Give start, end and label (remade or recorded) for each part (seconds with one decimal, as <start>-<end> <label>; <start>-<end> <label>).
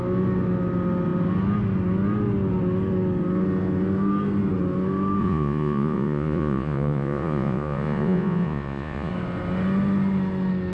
0.0-5.2 recorded; 5.2-9.1 remade; 9.1-10.7 recorded